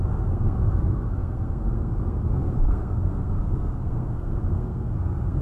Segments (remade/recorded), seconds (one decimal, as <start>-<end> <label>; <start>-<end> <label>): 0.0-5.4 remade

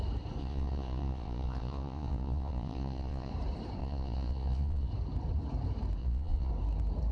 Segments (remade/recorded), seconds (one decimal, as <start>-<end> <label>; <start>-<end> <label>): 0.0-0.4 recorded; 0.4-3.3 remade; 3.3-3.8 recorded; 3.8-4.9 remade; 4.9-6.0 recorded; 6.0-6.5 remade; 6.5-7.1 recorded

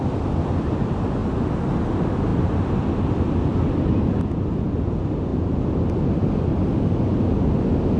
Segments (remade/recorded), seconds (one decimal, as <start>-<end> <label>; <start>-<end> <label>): 0.0-2.3 recorded; 2.3-3.3 remade; 3.3-8.0 recorded

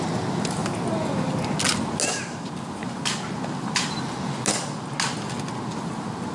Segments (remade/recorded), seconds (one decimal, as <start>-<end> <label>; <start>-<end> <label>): 0.0-6.3 recorded

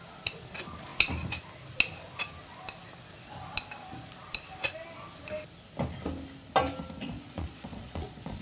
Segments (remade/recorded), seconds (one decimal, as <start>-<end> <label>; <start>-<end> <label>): 0.0-7.0 recorded; 7.0-8.4 remade